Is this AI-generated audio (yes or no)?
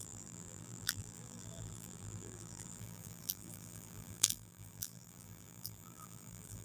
yes